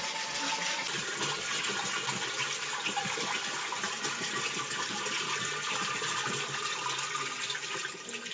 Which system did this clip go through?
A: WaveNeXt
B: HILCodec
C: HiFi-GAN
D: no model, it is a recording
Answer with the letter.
D